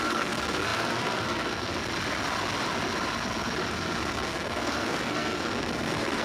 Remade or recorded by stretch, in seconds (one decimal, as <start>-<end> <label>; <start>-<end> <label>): 0.0-1.7 remade; 1.7-3.7 recorded; 3.7-6.2 remade